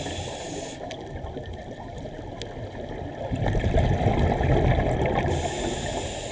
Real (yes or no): yes